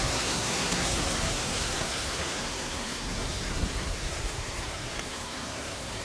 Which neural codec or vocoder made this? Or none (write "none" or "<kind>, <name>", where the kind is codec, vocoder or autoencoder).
codec, SNAC